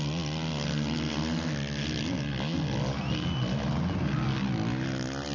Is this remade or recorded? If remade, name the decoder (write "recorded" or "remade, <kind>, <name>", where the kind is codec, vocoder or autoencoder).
recorded